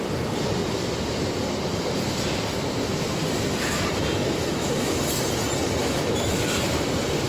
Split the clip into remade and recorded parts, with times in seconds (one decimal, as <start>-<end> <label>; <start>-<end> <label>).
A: 0.0-4.2 recorded; 4.2-5.0 remade; 5.0-5.8 recorded; 5.8-6.4 remade; 6.4-7.3 recorded